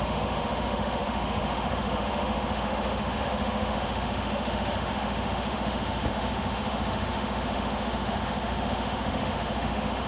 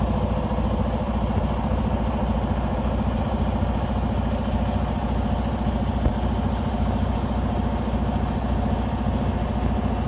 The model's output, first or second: first